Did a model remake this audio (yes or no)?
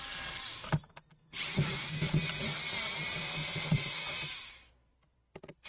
no